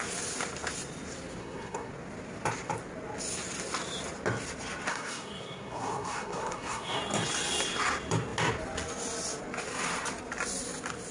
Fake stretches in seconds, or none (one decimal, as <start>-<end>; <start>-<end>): 1.4-1.9; 4.9-7.0

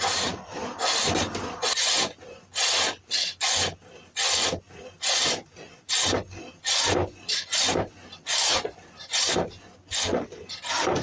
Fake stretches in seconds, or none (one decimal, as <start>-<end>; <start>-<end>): none

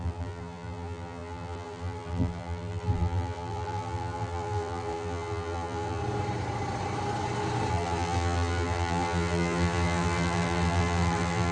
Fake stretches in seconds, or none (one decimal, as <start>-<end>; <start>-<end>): 0.0-6.0; 7.7-11.5

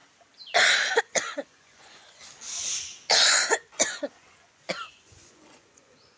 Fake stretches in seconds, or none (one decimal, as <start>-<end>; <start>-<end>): 1.0-2.2; 3.1-6.2

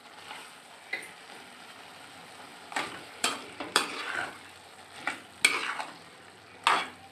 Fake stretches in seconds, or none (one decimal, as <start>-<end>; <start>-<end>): 2.5-4.3

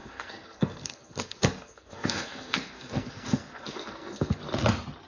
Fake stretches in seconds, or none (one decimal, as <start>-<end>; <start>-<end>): 0.0-4.4

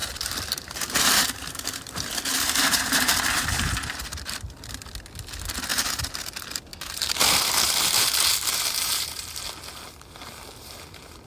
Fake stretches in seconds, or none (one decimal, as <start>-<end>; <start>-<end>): 0.0-4.4; 5.7-6.3; 6.7-9.4